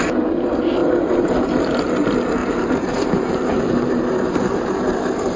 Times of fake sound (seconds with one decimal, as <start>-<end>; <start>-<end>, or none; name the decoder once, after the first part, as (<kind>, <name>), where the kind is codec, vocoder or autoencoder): 0.8-1.9 (vocoder, BigVGAN v2); 2.4-5.4